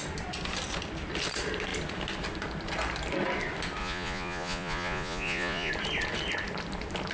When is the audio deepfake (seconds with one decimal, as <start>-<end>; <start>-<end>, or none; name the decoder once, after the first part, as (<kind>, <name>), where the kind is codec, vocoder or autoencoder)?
3.8-5.7 (vocoder, Vocos)